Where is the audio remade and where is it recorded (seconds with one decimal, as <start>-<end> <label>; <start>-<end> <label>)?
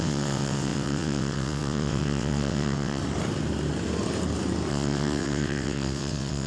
0.0-3.0 remade; 3.0-4.7 recorded; 4.7-6.5 remade